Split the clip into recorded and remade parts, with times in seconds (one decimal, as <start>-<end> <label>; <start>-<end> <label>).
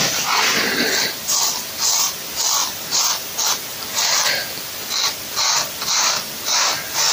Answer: 0.0-7.1 recorded